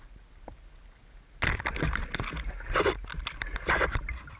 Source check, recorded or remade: recorded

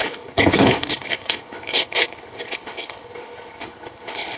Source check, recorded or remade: remade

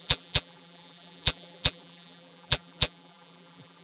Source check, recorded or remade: remade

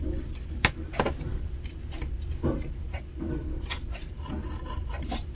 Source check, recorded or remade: recorded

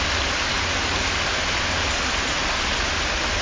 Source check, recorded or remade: recorded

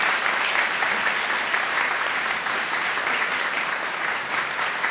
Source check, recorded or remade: remade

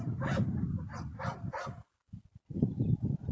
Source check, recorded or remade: recorded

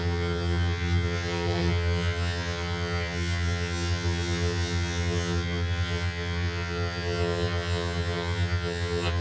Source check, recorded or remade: remade